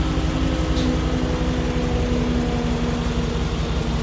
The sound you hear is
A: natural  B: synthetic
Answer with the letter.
A